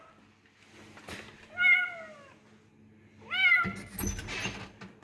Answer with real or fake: real